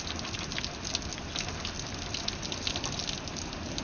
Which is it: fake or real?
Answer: real